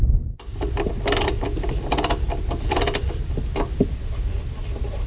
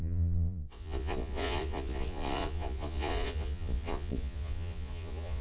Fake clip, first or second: second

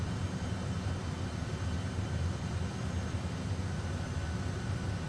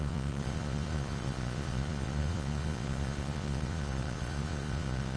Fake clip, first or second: second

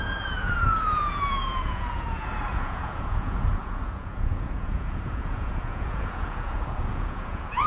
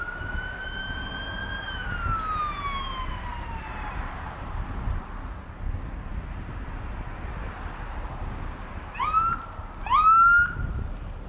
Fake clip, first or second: first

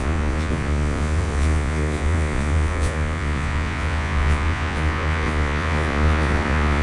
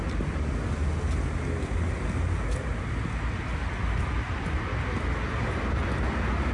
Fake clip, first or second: first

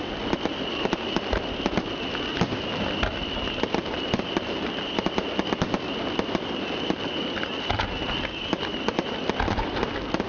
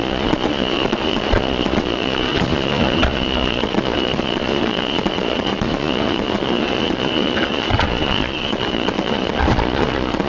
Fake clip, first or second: second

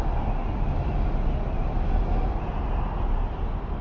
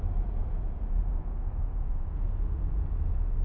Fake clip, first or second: second